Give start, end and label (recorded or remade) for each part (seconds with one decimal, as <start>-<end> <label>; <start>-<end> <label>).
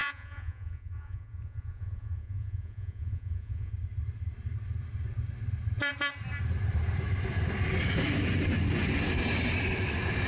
0.0-3.7 remade; 3.7-10.3 recorded